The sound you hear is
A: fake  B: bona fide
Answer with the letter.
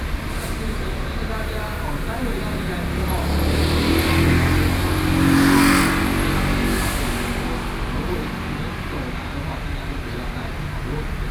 B